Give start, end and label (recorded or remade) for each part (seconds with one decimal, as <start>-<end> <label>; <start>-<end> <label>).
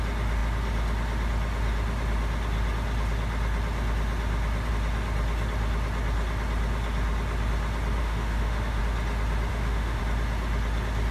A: 0.0-8.0 recorded; 8.0-8.8 remade; 8.8-9.5 recorded; 9.5-10.0 remade; 10.0-11.1 recorded